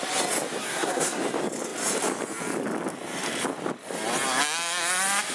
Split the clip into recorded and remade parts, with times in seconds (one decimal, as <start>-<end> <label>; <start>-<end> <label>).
0.0-0.6 recorded; 0.6-1.2 remade; 1.2-5.3 recorded